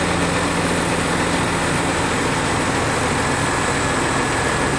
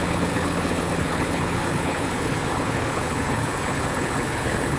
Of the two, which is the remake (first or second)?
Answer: second